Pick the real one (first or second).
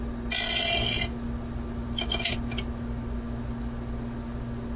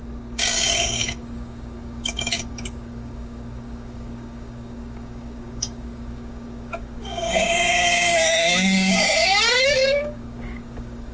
first